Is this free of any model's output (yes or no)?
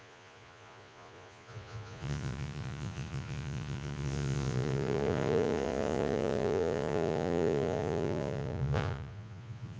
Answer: no